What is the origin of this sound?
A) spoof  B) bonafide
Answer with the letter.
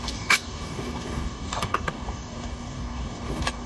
A